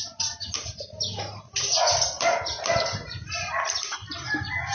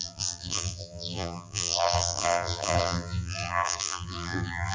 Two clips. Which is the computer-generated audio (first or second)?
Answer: second